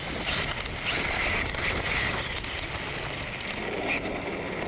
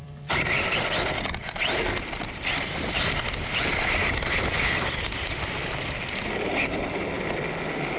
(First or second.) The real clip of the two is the first